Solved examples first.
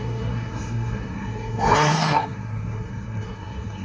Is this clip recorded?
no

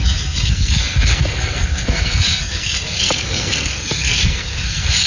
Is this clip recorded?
no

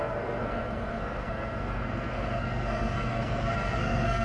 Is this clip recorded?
no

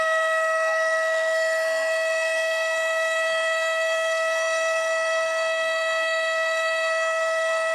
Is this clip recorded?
no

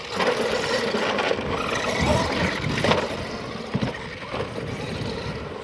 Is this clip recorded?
yes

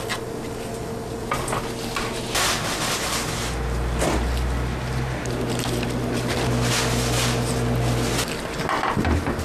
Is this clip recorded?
yes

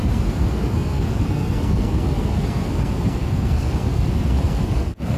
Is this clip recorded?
no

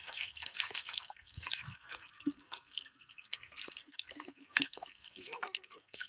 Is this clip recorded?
no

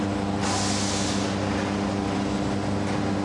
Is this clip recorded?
yes